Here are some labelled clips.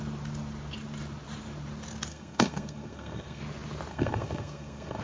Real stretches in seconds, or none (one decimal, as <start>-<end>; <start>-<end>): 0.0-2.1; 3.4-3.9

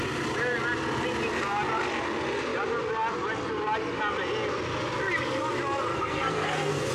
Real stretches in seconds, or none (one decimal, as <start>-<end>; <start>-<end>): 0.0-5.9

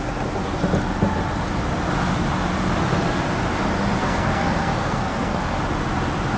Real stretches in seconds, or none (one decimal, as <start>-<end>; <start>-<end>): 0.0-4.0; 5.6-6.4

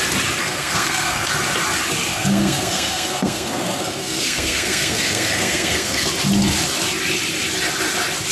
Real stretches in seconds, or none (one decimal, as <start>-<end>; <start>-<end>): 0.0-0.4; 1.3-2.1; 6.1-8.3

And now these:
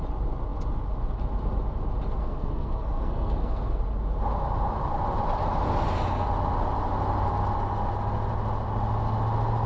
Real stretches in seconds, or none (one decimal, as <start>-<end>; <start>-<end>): 0.0-2.2; 3.8-9.7